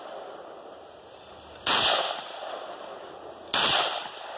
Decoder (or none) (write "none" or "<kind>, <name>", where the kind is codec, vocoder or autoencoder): none